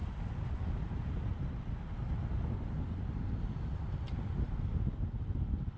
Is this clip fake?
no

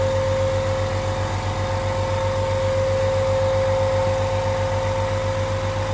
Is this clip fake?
no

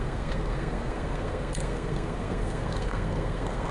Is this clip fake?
yes